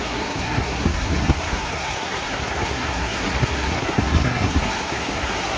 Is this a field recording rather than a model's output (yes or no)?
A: no